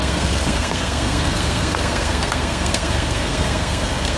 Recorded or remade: remade